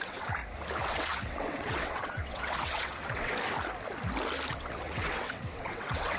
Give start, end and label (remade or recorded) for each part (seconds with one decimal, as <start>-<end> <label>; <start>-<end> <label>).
0.0-0.4 remade; 0.4-0.9 recorded; 0.9-3.3 remade; 3.3-4.5 recorded; 4.5-6.2 remade